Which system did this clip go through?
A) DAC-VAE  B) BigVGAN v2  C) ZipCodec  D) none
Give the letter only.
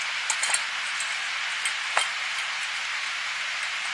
D